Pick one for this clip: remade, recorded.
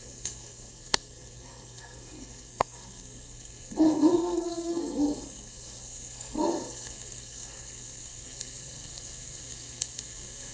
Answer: remade